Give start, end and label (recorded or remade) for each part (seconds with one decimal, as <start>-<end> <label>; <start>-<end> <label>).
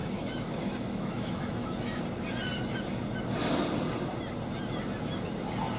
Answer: 0.0-2.0 remade; 2.0-5.8 recorded